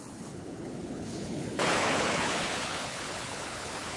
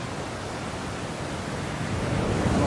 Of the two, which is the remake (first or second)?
first